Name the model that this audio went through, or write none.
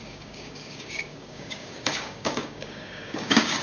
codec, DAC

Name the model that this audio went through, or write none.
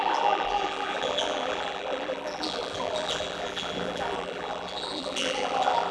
vocoder, BigVGAN v2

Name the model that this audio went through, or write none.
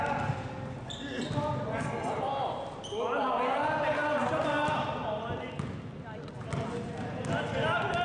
none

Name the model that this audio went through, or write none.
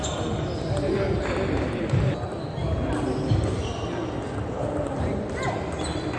none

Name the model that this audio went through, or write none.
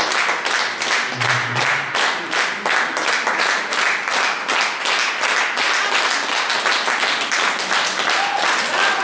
none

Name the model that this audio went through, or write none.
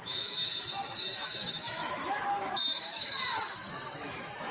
autoencoder, DAC-VAE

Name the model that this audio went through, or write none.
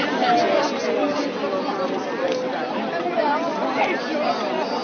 none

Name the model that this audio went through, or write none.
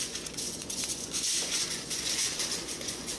vocoder, Vocos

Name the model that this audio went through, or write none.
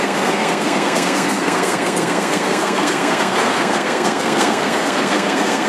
codec, SNAC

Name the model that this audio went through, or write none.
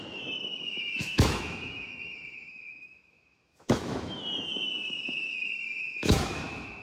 autoencoder, DAC-VAE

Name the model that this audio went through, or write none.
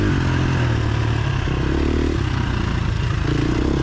none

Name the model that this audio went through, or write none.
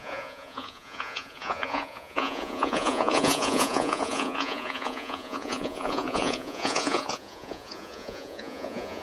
vocoder, Vocos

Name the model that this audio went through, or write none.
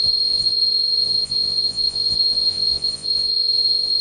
vocoder, Vocos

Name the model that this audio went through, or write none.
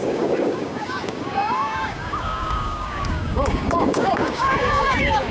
codec, DAC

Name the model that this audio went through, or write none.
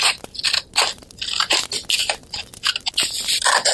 none